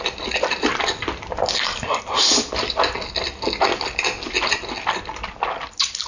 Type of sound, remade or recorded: recorded